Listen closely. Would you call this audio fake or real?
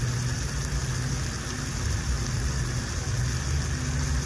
real